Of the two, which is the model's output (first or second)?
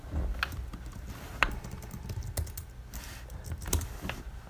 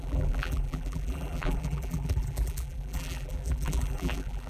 second